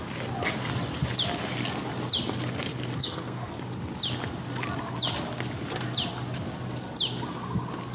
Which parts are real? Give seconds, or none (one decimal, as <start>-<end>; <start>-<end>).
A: 0.0-3.0; 3.6-7.9